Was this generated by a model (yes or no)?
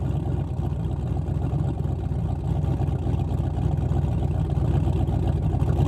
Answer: no